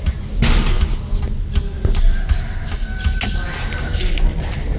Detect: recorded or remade recorded